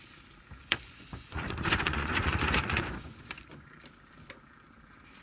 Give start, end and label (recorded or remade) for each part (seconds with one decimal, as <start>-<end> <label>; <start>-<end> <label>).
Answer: 0.0-0.6 recorded; 0.6-3.7 remade; 3.7-5.2 recorded